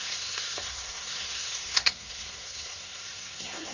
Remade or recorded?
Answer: remade